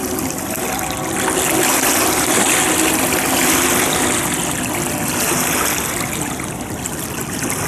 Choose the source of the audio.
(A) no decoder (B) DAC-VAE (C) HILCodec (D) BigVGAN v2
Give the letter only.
A